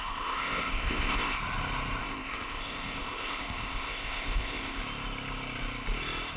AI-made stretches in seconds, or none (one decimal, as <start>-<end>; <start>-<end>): 0.0-1.4; 2.0-4.8